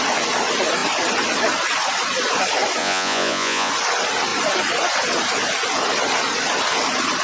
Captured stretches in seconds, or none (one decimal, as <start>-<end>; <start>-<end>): 0.0-2.8; 3.7-7.2